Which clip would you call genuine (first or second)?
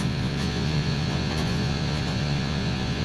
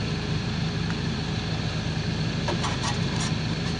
second